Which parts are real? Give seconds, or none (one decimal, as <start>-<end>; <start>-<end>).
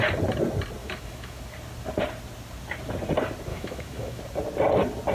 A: 0.0-0.8; 1.4-3.5; 4.2-5.1